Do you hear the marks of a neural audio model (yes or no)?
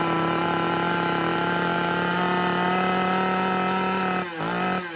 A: no